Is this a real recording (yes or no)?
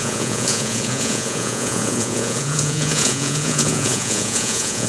no